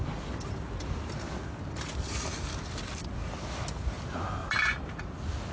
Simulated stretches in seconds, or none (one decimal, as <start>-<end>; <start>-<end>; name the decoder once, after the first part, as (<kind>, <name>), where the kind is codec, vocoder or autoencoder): none